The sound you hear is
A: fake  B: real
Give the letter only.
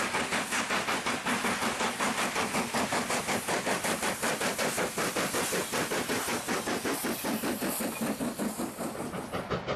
B